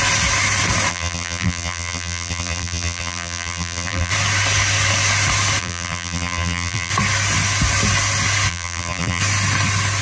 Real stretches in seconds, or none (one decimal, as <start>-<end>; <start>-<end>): 0.0-0.9; 4.1-5.6; 6.9-8.5; 9.2-10.0

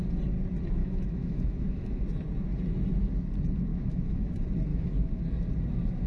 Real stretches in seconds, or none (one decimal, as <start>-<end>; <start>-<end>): 0.0-0.8; 2.0-3.7; 4.3-4.7; 5.2-6.1

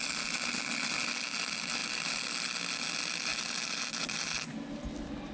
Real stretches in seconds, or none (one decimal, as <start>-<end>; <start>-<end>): 0.0-5.3

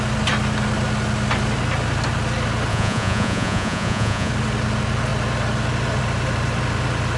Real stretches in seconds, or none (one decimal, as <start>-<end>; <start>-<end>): 0.0-2.7; 4.3-7.2

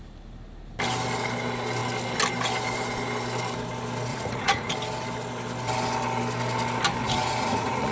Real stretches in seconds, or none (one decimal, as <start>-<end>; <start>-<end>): 0.0-4.1; 4.7-7.0

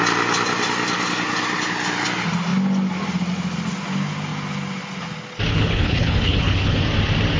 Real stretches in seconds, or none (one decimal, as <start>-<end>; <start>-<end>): 0.0-5.5; 6.8-7.4

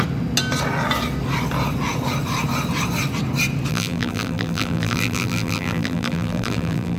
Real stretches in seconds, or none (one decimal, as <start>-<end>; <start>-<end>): 0.0-3.7

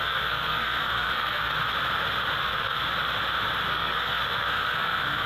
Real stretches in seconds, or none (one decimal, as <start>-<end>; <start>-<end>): 1.5-2.4; 2.8-3.7